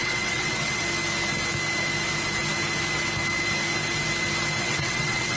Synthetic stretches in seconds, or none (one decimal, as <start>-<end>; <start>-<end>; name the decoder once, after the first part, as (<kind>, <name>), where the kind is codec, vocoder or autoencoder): 0.0-0.8 (vocoder, WaveNeXt); 4.6-5.4